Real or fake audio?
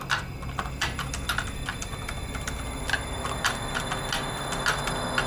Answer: real